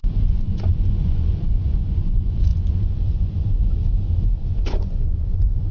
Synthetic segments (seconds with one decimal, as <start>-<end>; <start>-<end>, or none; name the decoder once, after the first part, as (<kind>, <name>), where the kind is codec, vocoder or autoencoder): 0.0-3.8 (vocoder, Vocos); 4.6-5.7